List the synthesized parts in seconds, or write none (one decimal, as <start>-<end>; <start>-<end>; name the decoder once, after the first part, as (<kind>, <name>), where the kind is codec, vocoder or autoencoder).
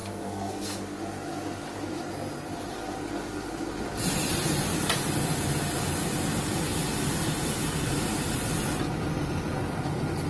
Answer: 0.0-0.8 (codec, SNAC)